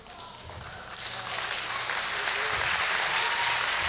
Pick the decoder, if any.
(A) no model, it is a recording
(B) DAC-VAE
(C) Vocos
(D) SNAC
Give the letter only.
A